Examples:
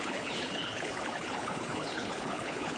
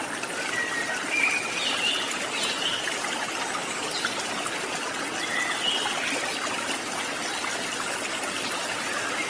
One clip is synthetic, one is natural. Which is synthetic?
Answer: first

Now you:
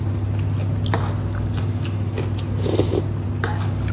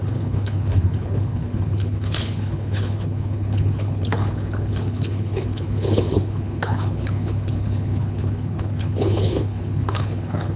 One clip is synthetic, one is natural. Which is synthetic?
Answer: second